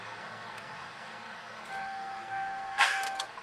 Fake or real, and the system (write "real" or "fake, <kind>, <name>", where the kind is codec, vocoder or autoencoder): fake, codec, SNAC